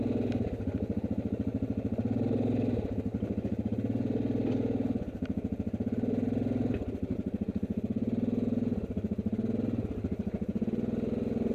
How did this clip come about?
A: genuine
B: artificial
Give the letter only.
A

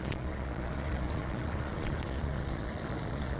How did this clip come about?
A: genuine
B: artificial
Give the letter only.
B